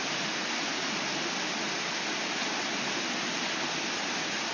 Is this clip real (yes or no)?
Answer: yes